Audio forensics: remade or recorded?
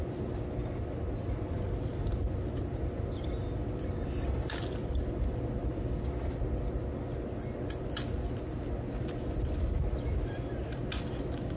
recorded